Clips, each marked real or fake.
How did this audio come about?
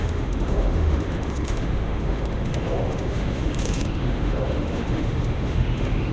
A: fake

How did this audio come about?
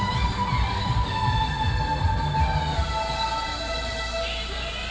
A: real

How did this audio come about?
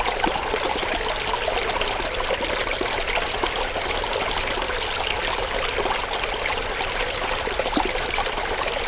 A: real